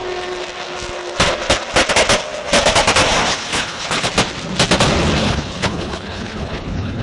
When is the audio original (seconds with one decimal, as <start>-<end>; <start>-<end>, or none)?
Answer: 0.0-3.3; 4.1-5.2